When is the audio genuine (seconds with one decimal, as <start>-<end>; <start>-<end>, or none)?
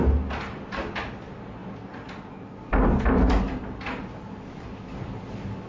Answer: 0.0-5.7